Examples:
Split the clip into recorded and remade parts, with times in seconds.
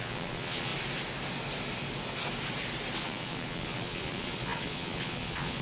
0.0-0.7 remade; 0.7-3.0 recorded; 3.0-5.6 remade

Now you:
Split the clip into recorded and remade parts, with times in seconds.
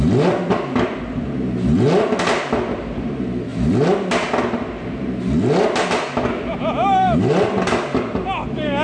0.0-8.8 recorded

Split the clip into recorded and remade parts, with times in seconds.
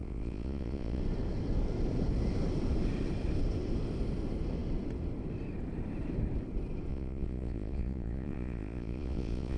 0.0-1.0 remade; 1.0-6.9 recorded; 6.9-9.6 remade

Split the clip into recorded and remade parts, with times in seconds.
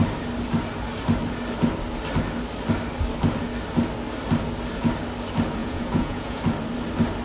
0.0-5.6 recorded; 5.6-6.4 remade; 6.4-7.2 recorded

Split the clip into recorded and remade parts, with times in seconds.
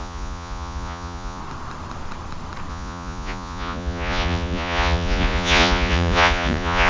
0.0-1.4 remade; 1.4-2.7 recorded; 2.7-6.9 remade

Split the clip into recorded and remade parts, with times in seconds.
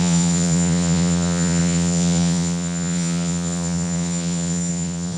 0.0-5.2 remade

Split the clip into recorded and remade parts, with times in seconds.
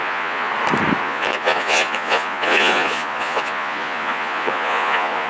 0.0-0.5 remade; 0.5-1.0 recorded; 1.0-5.3 remade